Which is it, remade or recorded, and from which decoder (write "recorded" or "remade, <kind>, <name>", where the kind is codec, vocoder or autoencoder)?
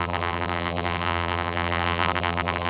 remade, vocoder, BigVGAN v2